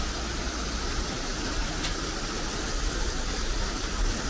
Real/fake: real